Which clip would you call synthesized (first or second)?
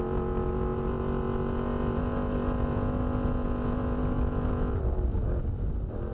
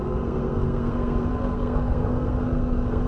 second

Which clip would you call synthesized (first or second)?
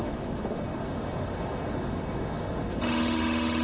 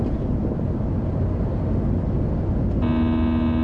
first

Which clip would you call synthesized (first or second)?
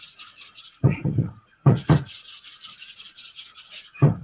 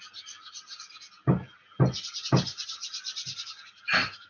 first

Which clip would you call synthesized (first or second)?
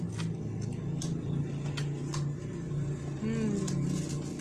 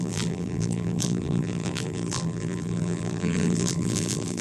second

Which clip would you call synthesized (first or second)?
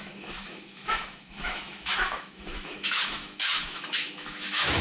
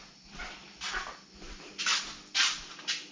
first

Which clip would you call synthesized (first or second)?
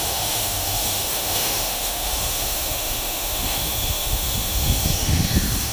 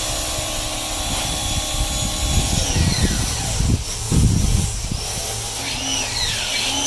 first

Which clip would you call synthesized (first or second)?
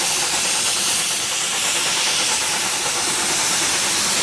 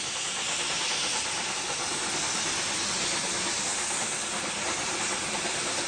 first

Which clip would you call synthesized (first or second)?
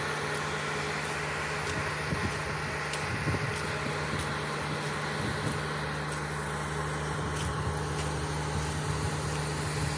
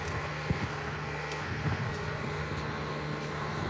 second